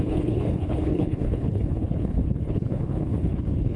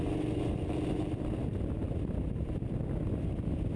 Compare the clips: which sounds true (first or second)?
second